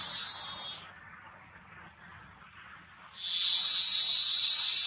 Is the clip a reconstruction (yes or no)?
no